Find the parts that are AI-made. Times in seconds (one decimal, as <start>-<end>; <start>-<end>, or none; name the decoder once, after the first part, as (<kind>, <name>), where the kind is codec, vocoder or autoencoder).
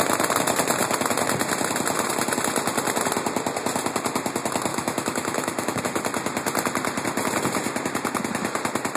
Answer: 4.7-5.8 (autoencoder, DAC-VAE)